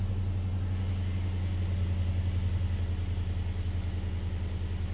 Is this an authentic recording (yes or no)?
yes